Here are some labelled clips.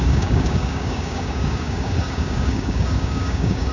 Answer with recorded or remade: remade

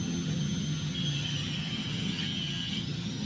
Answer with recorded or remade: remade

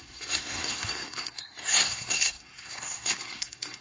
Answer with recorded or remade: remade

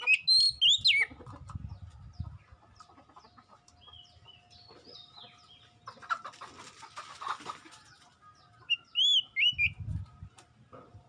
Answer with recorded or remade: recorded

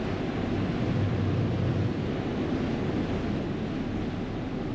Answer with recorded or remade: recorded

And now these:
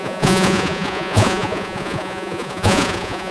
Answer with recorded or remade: remade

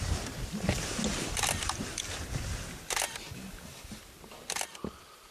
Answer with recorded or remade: recorded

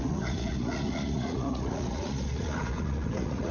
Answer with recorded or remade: remade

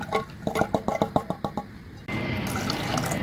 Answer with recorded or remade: recorded